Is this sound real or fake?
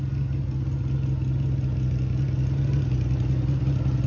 real